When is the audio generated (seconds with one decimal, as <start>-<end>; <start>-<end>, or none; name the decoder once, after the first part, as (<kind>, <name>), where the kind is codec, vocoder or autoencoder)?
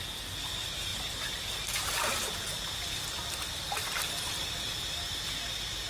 none